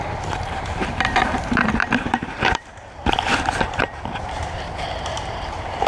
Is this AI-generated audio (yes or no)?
yes